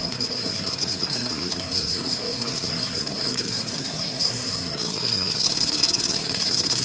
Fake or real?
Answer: fake